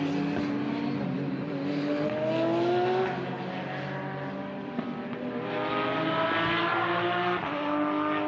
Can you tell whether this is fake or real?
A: real